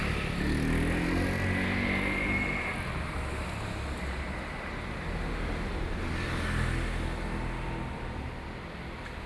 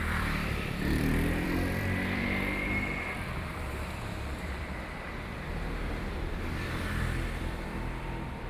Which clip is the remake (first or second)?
second